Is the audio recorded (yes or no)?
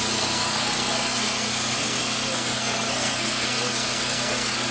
no